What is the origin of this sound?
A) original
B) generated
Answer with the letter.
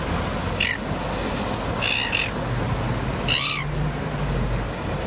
A